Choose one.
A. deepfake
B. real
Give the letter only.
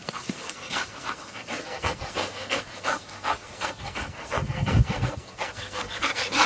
A